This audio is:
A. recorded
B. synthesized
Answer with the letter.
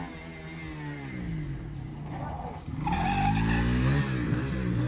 A